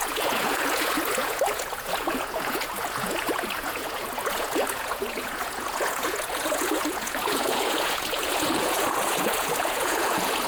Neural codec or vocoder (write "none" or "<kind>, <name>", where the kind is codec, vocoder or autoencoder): vocoder, Vocos